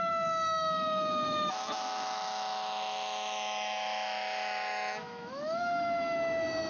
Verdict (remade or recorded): remade